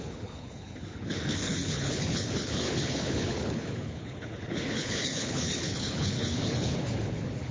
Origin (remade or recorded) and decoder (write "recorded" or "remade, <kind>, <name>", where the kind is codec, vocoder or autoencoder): remade, codec, HILCodec